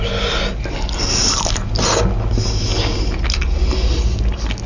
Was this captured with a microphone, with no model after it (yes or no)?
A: yes